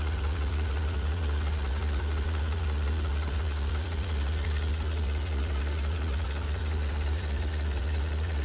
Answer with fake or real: fake